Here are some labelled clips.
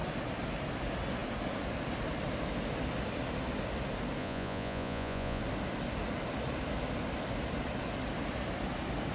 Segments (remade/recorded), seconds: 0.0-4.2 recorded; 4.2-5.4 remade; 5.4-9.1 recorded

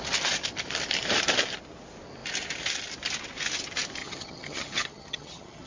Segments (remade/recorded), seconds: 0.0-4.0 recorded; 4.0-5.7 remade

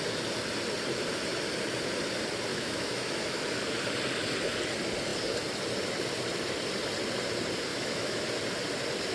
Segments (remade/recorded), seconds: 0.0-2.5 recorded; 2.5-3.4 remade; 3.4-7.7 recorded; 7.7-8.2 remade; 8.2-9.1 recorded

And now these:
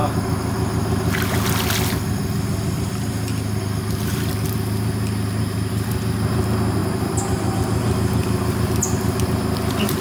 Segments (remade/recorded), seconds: 0.0-6.8 recorded; 6.8-7.5 remade; 7.5-10.0 recorded